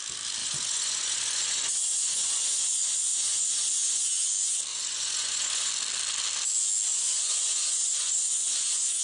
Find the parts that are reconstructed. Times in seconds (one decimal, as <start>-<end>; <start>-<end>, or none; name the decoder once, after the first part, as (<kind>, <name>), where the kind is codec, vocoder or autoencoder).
0.4-4.1 (vocoder, Vocos); 4.7-5.7; 6.9-9.0